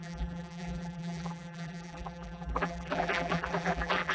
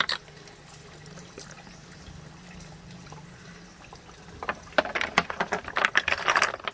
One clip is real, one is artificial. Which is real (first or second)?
second